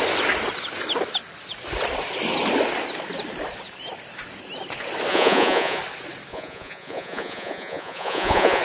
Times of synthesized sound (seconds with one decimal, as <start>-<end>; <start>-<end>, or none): 5.1-5.8; 6.3-8.6